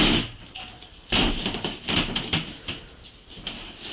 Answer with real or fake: real